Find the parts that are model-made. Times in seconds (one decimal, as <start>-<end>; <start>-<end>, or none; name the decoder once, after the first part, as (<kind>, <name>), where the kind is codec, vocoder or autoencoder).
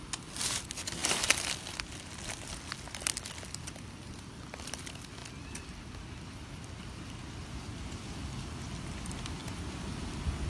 none